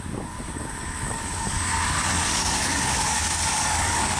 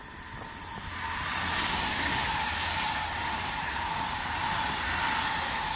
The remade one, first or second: first